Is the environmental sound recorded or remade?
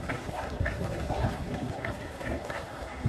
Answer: remade